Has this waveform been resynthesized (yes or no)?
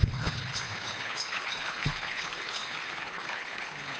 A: yes